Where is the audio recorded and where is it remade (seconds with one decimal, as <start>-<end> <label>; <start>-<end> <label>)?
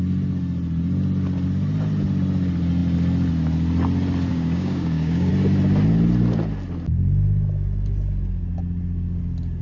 0.0-4.3 recorded; 4.3-5.3 remade; 5.3-9.6 recorded